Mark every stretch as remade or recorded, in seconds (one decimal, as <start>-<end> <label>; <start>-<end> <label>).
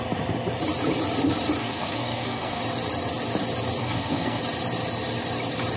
0.0-1.6 recorded; 1.6-2.6 remade; 2.6-3.8 recorded; 3.8-4.4 remade; 4.4-5.8 recorded